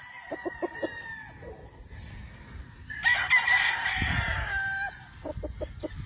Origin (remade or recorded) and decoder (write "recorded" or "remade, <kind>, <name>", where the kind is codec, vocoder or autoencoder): recorded